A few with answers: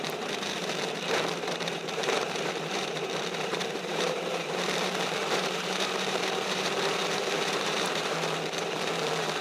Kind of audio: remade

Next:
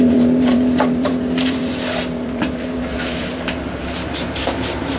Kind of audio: remade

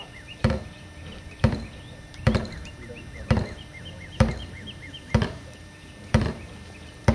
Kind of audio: remade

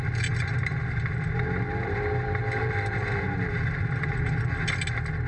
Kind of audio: recorded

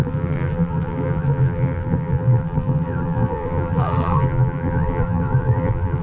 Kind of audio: remade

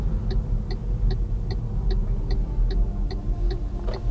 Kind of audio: recorded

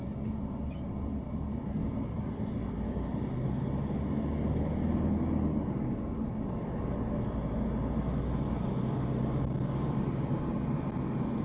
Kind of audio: recorded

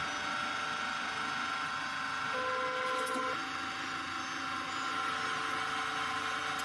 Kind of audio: recorded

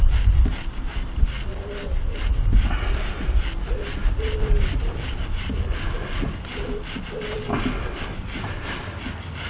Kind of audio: recorded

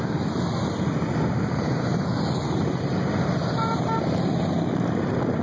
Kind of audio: remade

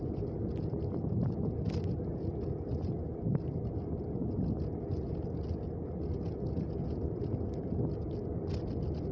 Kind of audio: recorded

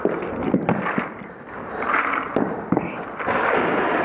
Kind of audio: remade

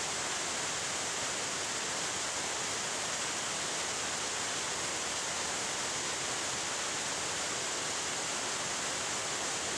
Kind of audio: recorded